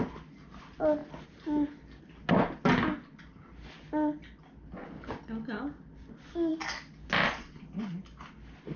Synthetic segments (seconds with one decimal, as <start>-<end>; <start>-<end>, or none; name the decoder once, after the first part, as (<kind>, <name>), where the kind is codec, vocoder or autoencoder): none